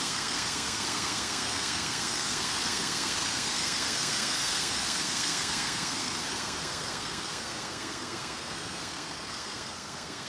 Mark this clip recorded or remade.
remade